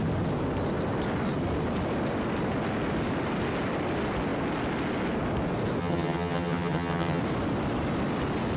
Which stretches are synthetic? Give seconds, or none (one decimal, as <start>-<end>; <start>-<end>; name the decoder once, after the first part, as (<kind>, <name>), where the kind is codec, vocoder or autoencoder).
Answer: 5.8-7.2 (vocoder, HiFi-GAN)